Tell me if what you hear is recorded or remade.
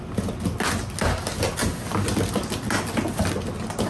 recorded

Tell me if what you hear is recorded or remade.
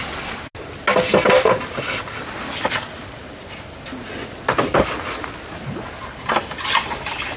recorded